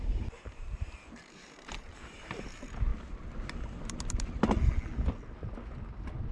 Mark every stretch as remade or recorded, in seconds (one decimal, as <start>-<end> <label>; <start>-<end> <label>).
0.0-2.9 remade; 2.9-6.3 recorded